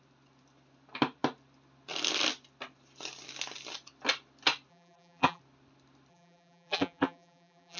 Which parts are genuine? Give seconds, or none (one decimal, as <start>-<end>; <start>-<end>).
0.0-4.7; 5.4-6.1